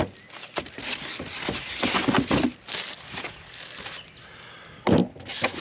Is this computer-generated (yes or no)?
no